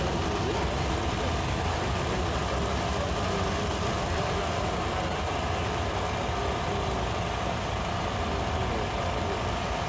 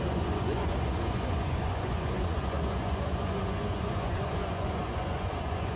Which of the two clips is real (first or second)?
first